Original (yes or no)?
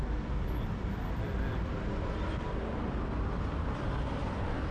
yes